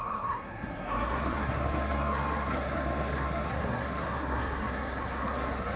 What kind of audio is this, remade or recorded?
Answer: remade